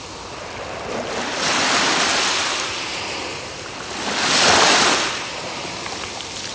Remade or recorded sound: recorded